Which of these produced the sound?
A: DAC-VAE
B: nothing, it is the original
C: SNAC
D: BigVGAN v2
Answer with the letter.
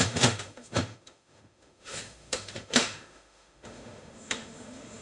A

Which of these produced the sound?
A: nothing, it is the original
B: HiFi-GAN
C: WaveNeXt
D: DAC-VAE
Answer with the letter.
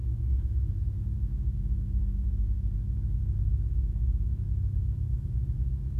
D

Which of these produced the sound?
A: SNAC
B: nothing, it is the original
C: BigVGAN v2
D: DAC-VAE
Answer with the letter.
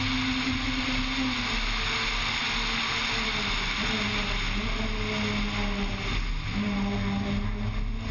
B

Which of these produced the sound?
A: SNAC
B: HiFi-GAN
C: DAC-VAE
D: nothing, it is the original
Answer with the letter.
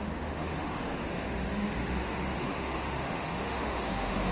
C